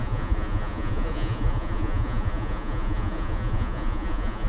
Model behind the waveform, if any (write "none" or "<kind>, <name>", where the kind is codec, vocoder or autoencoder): vocoder, Vocos